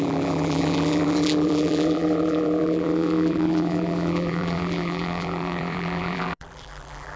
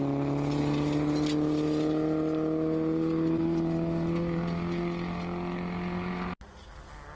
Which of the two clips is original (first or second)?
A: second